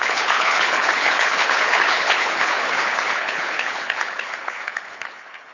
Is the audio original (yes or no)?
no